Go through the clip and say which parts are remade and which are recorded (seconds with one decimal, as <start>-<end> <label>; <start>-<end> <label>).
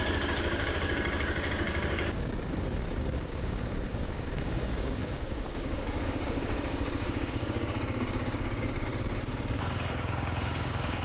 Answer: 0.0-8.9 remade; 8.9-9.7 recorded; 9.7-11.0 remade